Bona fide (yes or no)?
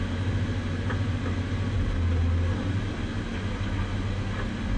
yes